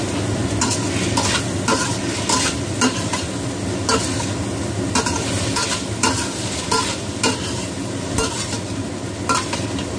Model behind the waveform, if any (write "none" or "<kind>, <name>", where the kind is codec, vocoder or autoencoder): none